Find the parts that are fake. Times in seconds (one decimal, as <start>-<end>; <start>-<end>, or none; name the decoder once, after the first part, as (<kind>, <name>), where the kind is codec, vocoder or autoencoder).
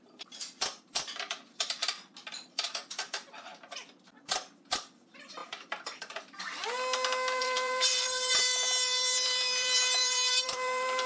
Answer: 0.0-1.8 (vocoder, BigVGAN v2); 2.3-6.6; 7.4-11.1